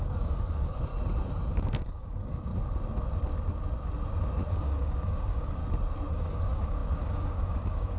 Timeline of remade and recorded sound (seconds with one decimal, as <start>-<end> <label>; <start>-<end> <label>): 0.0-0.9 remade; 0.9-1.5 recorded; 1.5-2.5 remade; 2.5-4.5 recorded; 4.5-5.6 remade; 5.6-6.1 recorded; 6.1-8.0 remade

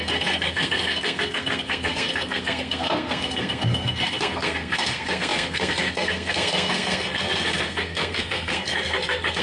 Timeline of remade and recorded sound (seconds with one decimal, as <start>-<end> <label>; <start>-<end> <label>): 0.0-9.4 remade

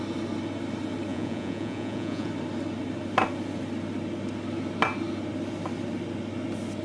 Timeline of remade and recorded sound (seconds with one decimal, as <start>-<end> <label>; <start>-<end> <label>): 0.0-1.1 recorded; 1.1-2.3 remade; 2.3-6.8 recorded

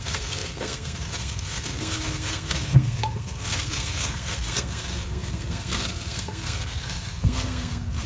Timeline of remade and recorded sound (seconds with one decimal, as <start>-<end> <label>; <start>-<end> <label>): 0.0-8.1 remade

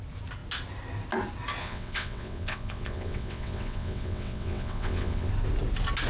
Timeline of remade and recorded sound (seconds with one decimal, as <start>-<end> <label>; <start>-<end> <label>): 0.0-1.6 recorded; 1.6-5.3 remade; 5.3-6.1 recorded

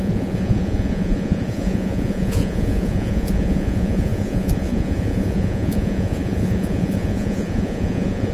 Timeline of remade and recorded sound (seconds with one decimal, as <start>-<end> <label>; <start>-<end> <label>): 0.0-8.3 remade

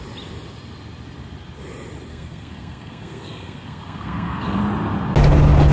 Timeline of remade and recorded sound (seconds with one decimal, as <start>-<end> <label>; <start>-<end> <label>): 0.0-2.1 recorded; 2.1-4.6 remade; 4.6-5.7 recorded